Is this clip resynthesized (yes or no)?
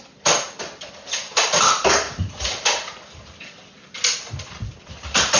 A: no